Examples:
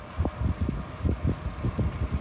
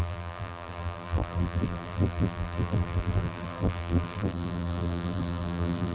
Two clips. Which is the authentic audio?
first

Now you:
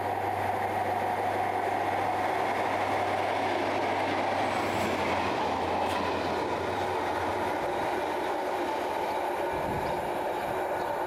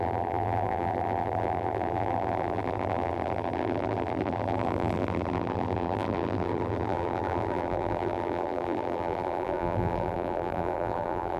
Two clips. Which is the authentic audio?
first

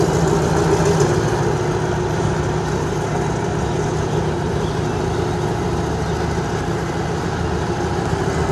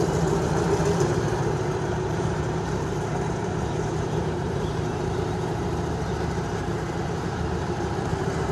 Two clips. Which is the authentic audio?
first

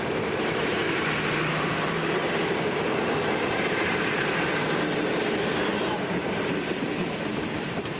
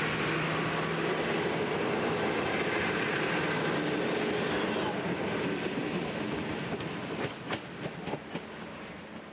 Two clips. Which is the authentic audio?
second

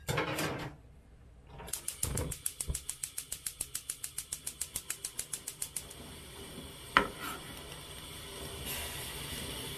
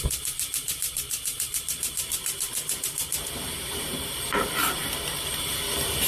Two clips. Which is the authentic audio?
first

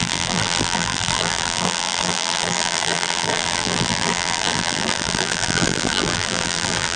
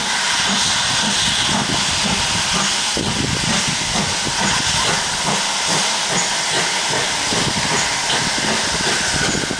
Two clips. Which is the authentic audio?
second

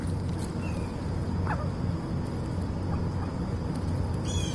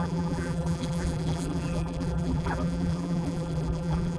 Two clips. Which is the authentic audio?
first